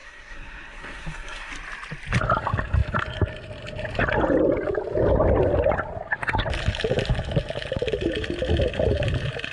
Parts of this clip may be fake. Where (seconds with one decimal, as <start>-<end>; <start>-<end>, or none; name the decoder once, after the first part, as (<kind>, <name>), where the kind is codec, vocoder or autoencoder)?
0.0-1.5 (codec, SNAC)